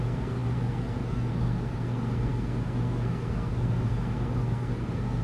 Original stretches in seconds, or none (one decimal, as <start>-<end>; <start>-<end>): none